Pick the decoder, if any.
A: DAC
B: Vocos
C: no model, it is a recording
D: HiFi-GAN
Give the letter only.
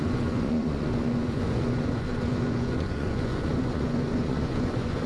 B